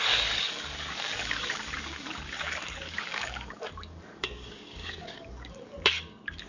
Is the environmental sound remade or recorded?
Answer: remade